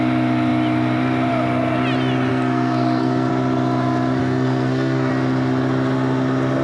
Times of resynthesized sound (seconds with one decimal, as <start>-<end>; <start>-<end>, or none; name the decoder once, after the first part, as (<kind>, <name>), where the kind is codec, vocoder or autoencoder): 2.3-3.3 (codec, SNAC); 4.2-5.1